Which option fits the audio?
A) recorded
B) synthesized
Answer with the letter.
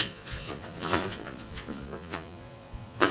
B